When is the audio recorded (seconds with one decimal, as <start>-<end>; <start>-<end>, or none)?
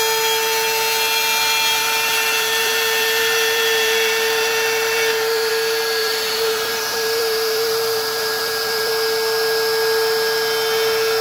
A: 0.0-1.8; 5.5-6.0; 8.9-11.2